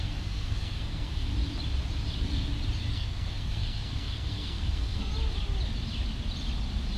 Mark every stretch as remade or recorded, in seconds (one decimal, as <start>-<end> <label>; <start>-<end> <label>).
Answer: 0.0-1.3 remade; 1.3-2.9 recorded; 2.9-5.1 remade; 5.1-7.0 recorded